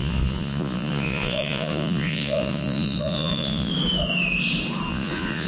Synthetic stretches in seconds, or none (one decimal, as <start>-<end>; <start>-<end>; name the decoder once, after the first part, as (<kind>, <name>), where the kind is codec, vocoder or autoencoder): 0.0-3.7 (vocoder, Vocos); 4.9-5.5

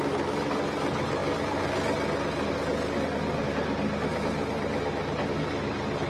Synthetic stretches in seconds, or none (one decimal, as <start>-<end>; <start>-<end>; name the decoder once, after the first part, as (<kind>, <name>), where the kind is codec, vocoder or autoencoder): none

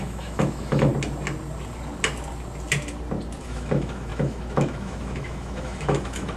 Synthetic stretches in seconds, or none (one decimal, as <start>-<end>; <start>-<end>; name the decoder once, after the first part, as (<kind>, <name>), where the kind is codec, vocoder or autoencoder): 0.0-0.9 (autoencoder, DAC-VAE); 3.4-6.4

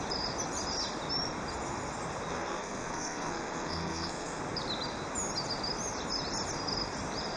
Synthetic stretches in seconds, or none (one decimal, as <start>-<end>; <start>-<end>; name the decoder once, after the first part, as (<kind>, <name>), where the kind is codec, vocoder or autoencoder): 2.3-4.4 (codec, SNAC)

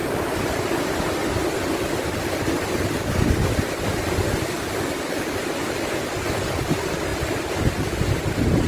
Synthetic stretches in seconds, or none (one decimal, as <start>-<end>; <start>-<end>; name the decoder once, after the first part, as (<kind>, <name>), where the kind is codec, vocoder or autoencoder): 0.0-0.6 (vocoder, BigVGAN v2)

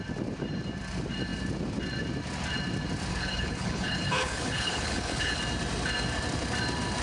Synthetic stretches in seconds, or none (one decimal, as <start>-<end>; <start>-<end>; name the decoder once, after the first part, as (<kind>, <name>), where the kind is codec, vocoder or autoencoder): 3.1-5.4 (codec, HILCodec)

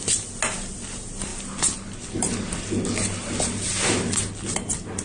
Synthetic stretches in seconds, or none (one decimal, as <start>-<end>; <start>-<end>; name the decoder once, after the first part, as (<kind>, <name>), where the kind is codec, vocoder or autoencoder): none